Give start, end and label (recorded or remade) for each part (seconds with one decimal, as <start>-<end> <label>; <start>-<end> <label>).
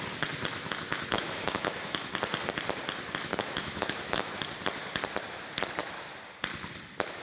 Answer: 0.0-0.5 recorded; 0.5-2.1 remade; 2.1-3.3 recorded; 3.3-4.3 remade; 4.3-7.2 recorded